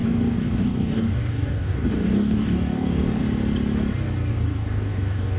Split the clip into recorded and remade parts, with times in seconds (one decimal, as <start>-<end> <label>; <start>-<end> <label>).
0.0-3.2 remade; 3.2-4.3 recorded; 4.3-5.4 remade